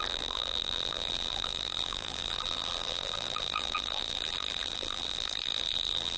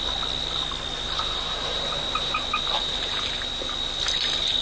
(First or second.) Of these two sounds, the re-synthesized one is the first